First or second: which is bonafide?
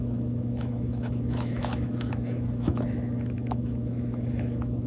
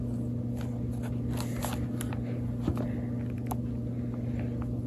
second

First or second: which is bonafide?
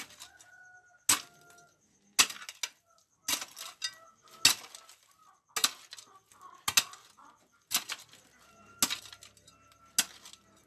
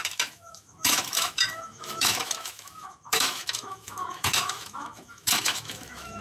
first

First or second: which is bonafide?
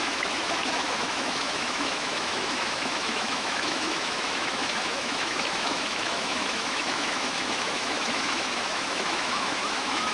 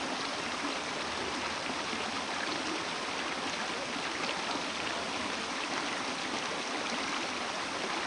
second